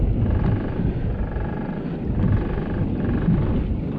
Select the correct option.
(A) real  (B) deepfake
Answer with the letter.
A